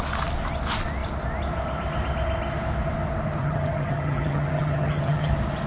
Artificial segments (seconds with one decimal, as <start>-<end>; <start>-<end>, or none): 3.4-5.3